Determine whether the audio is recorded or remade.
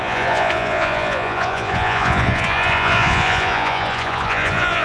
remade